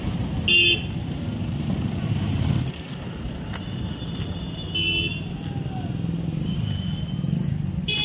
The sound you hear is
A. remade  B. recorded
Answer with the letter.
B